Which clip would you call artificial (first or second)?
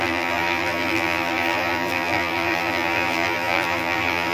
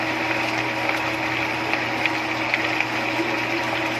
first